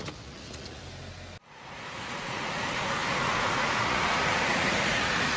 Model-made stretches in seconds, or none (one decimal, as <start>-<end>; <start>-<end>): 0.0-0.8; 1.5-5.4